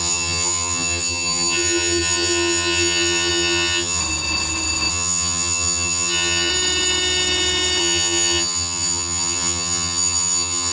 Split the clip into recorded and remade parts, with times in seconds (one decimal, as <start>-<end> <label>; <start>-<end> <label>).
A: 0.0-4.0 remade; 4.0-4.9 recorded; 4.9-6.5 remade; 6.5-7.8 recorded; 7.8-10.7 remade